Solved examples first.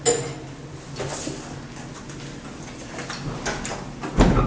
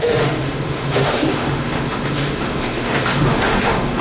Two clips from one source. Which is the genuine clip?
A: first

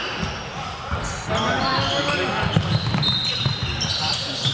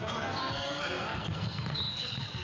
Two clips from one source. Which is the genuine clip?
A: first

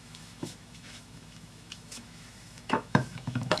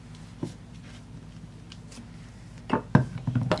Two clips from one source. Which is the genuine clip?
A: second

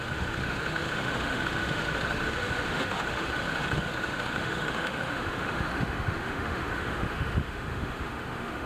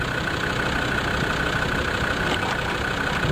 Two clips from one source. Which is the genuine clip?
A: second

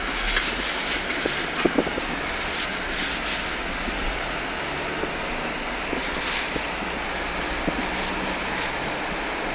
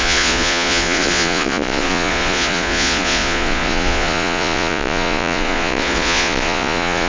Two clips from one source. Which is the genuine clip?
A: first